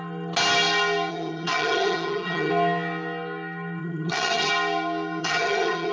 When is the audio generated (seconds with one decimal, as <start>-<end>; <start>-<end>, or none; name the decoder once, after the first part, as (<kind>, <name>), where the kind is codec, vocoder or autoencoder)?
1.1-2.5 (vocoder, HiFi-GAN); 3.8-4.5; 5.2-5.9